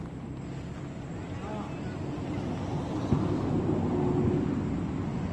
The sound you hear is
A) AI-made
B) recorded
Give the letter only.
B